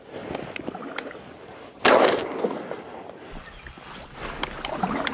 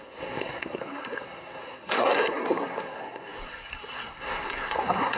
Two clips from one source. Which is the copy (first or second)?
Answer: second